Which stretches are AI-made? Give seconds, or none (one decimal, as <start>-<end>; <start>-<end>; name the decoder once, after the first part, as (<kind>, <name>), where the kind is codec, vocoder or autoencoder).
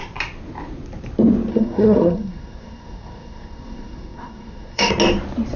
1.5-4.9 (codec, SNAC)